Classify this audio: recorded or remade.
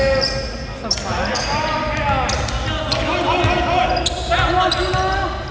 recorded